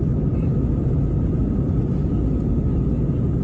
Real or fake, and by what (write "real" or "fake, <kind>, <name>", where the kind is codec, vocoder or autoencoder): real